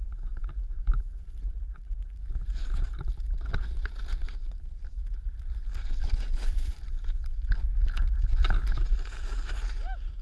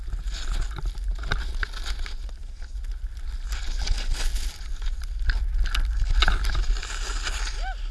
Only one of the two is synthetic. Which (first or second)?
first